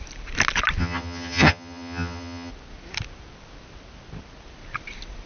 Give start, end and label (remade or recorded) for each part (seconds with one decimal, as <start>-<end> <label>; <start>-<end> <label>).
0.0-0.8 recorded; 0.8-2.5 remade; 2.5-5.3 recorded